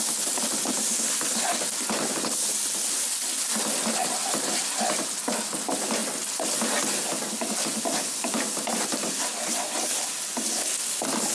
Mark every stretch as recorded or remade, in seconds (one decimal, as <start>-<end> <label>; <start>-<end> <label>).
0.0-11.3 recorded